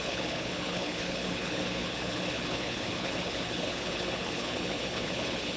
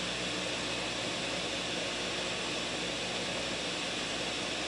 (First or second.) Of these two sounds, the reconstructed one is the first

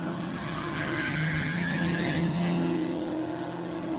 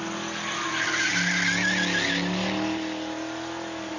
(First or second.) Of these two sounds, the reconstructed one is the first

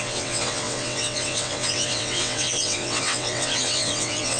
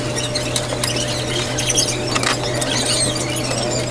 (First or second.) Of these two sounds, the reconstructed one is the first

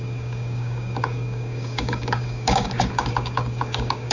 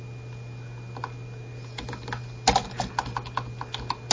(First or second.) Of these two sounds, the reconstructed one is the first